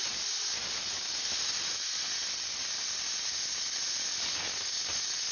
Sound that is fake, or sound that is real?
real